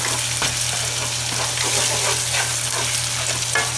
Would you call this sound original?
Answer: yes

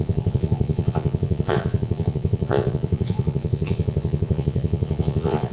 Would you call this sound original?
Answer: no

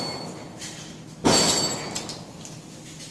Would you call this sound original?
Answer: yes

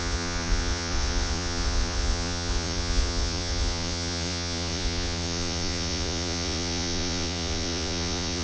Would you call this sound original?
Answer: no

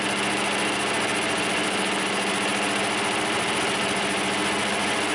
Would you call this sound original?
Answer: yes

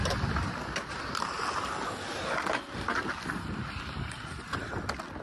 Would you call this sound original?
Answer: yes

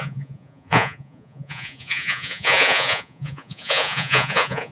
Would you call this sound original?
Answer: no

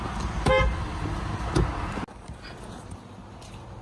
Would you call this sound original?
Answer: yes